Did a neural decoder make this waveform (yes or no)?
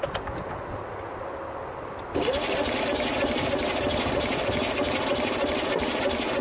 no